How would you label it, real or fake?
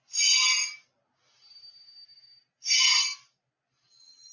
real